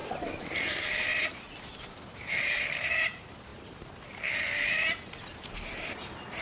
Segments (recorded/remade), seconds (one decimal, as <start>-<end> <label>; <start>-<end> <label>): 0.0-1.1 remade; 1.1-2.2 recorded; 2.2-6.4 remade